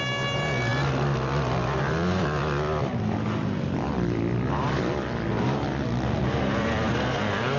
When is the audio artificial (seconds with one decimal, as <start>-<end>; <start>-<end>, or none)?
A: none